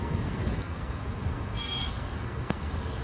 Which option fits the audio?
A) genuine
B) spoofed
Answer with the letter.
B